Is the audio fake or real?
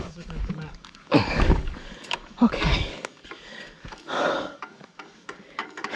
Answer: fake